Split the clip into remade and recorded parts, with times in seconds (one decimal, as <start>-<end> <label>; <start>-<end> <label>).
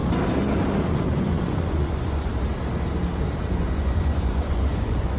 0.0-0.9 recorded; 0.9-2.3 remade; 2.3-3.5 recorded; 3.5-5.2 remade